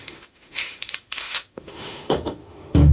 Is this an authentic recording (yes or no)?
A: no